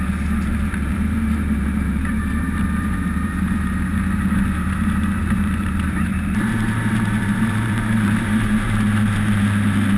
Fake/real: fake